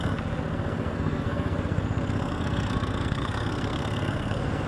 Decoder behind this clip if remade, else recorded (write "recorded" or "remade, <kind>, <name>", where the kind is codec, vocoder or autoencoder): remade, codec, SNAC